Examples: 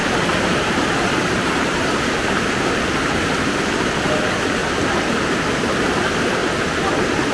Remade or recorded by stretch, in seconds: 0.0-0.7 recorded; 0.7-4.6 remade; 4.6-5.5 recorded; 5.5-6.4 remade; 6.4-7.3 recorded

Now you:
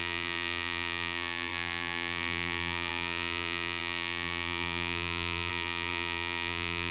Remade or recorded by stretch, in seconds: 0.0-6.9 remade

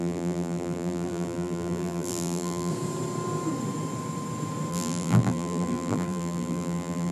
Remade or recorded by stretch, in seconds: 0.0-2.7 remade; 2.7-4.7 recorded; 4.7-7.1 remade